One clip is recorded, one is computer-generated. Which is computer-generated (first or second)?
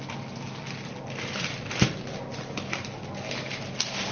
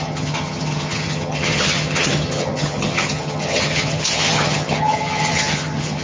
second